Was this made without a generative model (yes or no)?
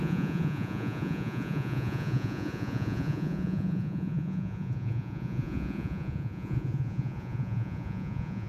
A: no